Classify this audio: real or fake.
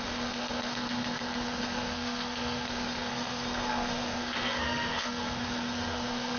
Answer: fake